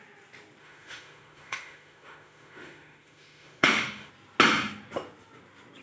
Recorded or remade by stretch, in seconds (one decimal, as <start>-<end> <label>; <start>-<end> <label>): 0.0-0.6 recorded; 0.6-4.1 remade; 4.1-5.8 recorded